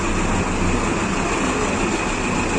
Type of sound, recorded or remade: recorded